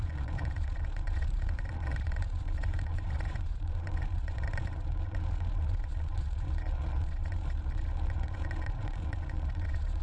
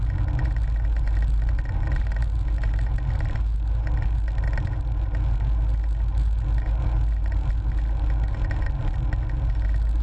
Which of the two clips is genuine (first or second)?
second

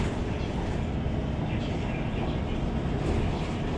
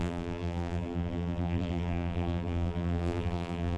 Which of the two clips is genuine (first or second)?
first